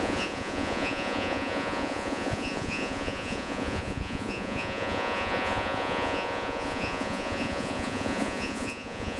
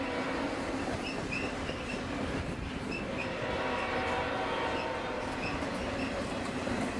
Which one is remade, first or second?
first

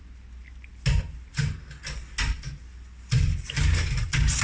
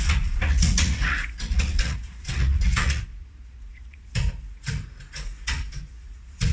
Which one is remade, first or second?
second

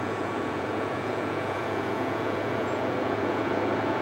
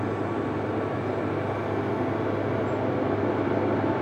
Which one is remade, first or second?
first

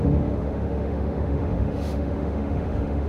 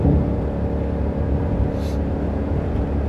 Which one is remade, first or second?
first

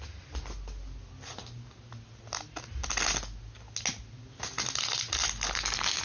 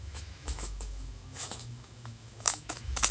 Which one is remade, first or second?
second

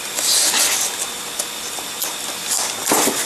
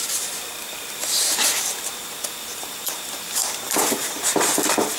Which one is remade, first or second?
second